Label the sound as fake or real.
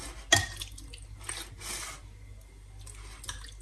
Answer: real